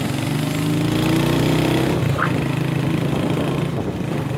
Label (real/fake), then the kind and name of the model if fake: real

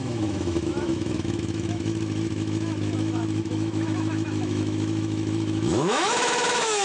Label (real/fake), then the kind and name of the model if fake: fake, autoencoder, DAC-VAE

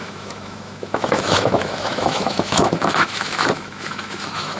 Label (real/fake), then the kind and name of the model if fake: fake, autoencoder, DAC-VAE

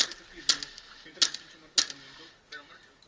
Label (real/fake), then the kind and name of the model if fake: real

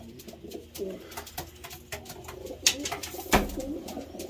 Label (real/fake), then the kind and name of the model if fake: real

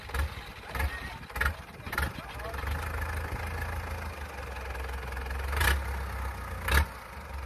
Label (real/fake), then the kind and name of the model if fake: real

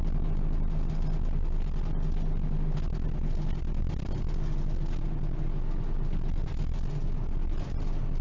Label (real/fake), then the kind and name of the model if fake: real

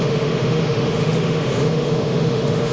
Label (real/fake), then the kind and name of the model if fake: fake, autoencoder, DAC-VAE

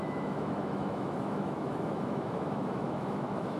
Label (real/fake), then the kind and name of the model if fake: fake, autoencoder, DAC-VAE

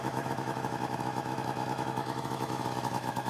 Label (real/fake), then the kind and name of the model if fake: fake, autoencoder, DAC-VAE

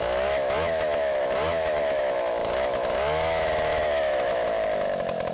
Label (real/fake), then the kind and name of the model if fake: fake, autoencoder, DAC-VAE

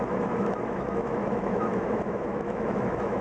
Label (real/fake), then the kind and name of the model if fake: fake, autoencoder, DAC-VAE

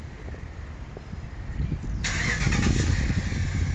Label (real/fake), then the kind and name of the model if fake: real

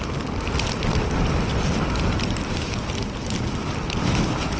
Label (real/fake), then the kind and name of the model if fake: real